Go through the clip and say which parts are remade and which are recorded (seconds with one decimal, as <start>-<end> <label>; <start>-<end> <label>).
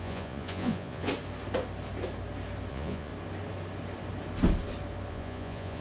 0.0-1.1 remade; 1.1-2.7 recorded; 2.7-3.1 remade; 3.1-5.1 recorded; 5.1-5.8 remade